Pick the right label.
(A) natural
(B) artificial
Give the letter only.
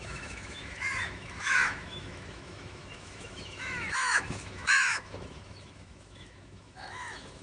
B